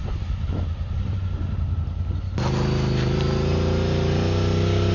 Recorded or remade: recorded